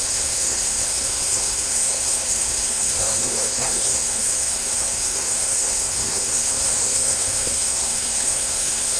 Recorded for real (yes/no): no